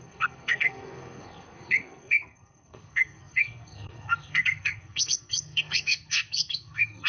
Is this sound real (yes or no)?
no